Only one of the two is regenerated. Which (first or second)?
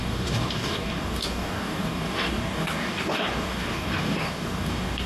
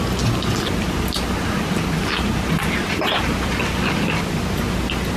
first